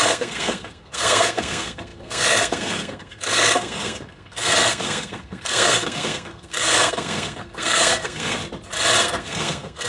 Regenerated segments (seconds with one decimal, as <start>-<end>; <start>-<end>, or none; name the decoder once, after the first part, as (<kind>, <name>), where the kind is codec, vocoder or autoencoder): 0.0-8.4 (codec, SNAC); 9.0-9.9